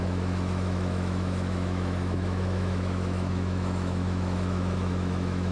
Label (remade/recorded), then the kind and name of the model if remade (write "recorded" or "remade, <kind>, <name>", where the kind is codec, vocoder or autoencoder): remade, autoencoder, DAC-VAE